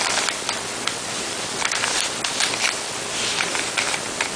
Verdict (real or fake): real